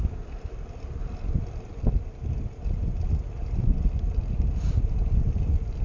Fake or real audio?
real